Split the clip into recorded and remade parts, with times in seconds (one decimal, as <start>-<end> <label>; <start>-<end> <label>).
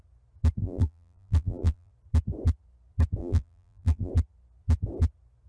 0.0-0.6 recorded; 0.6-1.9 remade; 1.9-3.2 recorded; 3.2-4.1 remade; 4.1-5.5 recorded